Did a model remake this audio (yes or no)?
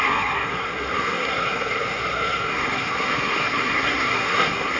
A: yes